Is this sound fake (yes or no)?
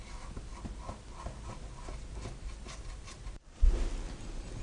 no